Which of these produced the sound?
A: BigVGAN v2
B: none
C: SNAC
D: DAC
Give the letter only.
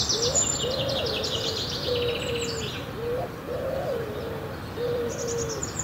B